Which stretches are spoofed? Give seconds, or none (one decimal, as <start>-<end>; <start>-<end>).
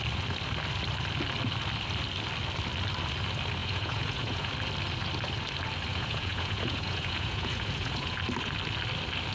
3.6-4.5; 5.9-8.2